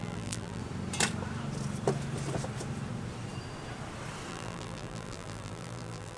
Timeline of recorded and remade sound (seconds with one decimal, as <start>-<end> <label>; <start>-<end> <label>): 0.0-0.6 remade; 0.6-4.3 recorded; 4.3-6.2 remade

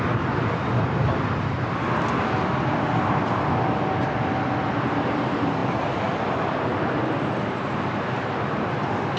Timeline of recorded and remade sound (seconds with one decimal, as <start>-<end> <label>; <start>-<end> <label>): 0.0-9.2 recorded

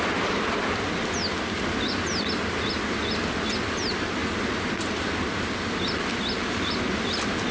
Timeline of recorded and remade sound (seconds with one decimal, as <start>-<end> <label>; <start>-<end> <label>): 0.0-7.5 recorded

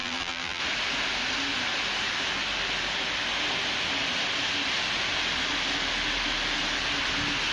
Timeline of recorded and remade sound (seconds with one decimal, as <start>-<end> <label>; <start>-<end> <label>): 0.0-0.6 remade; 0.6-7.5 recorded

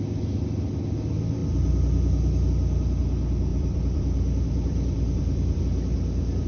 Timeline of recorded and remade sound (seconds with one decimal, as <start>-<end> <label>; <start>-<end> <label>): 0.0-3.5 recorded; 3.5-5.6 remade; 5.6-6.5 recorded

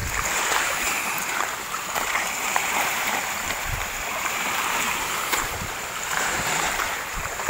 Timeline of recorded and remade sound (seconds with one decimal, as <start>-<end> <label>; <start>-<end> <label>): 0.0-0.6 recorded; 0.6-7.5 remade

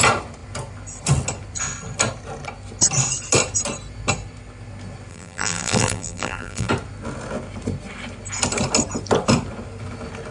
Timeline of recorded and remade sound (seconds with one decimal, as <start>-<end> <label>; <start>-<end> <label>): 0.0-5.1 recorded; 5.1-6.7 remade; 6.7-10.3 recorded